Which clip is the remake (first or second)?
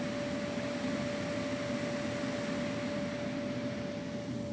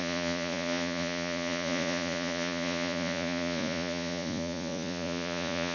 second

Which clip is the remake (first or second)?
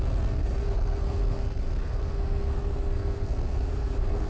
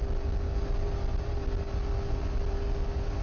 first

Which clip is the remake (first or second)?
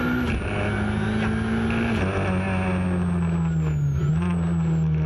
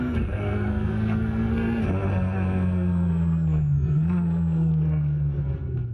second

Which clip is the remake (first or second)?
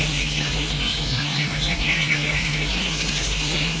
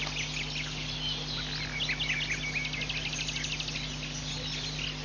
first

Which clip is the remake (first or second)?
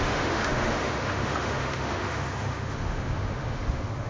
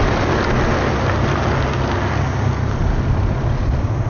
first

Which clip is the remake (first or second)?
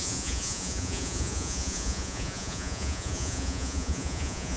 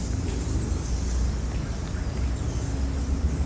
first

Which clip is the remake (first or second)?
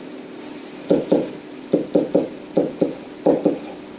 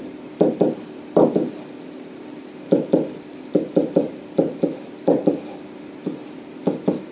second